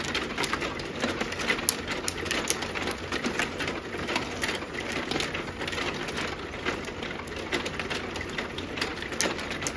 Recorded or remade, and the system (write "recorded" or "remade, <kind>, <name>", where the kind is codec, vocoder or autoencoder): recorded